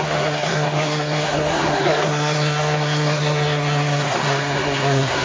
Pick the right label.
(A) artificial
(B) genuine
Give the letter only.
A